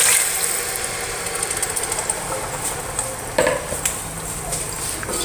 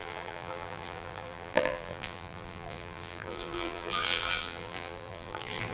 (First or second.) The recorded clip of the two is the first